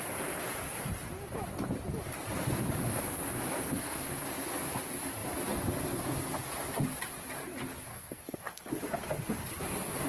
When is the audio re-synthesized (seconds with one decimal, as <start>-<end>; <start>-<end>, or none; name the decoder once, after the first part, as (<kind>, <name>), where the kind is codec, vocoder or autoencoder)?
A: 3.5-4.0 (codec, SNAC); 7.9-8.7

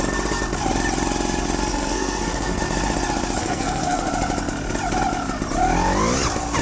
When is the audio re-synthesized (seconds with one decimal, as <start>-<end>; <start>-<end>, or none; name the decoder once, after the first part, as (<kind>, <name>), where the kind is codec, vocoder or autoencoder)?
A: 1.7-2.6 (codec, SNAC); 3.4-4.1

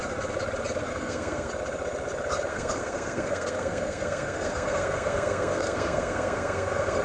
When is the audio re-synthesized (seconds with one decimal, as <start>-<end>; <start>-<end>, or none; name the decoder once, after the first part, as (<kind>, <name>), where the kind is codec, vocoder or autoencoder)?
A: 0.9-1.5 (codec, SNAC); 2.5-7.0

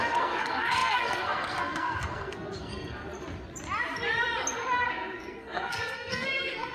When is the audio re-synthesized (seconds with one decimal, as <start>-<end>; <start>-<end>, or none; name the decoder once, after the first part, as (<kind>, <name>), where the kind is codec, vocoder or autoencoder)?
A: 0.0-3.1 (codec, SNAC); 4.8-6.7

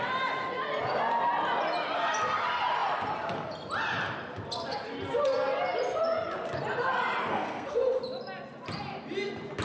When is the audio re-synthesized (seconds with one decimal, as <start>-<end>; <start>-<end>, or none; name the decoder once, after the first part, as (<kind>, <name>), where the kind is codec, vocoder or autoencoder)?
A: 7.3-8.0 (codec, SNAC)

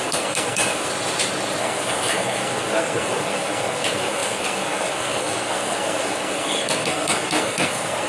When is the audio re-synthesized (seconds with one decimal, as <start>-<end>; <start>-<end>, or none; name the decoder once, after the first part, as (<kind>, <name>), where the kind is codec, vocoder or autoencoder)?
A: 0.0-0.9 (codec, SNAC); 1.6-8.1

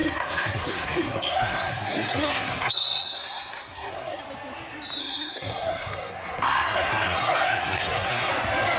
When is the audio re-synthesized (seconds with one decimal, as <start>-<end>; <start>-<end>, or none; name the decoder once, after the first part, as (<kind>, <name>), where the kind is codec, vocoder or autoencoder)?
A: 0.0-4.2 (codec, SNAC); 5.0-8.3

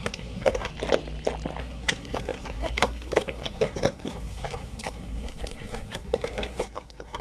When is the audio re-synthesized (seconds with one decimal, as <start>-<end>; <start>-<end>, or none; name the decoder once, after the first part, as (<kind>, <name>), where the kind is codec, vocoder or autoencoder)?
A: 0.0-0.7 (codec, SNAC); 1.6-7.2